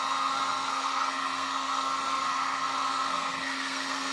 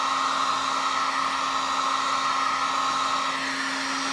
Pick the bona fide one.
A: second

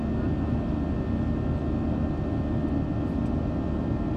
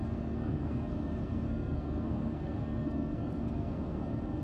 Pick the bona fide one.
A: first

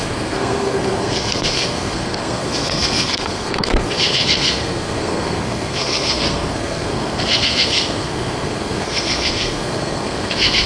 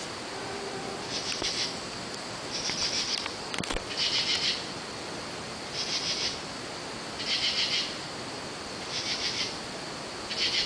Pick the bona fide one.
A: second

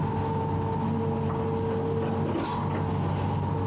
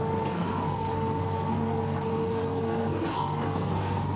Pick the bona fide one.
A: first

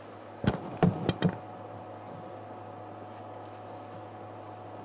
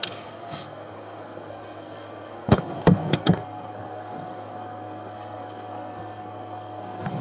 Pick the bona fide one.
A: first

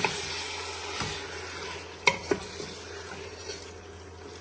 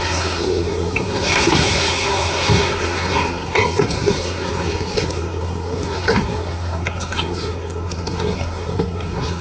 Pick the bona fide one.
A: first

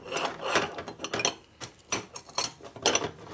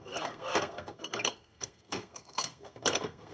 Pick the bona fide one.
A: first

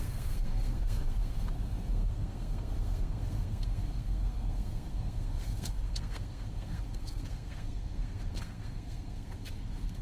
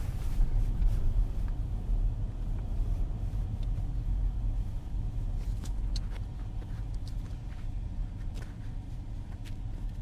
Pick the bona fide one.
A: second